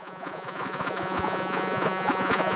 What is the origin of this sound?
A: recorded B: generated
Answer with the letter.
B